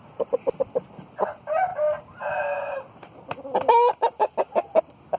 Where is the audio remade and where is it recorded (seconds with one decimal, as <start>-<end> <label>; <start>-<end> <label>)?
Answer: 0.0-5.2 recorded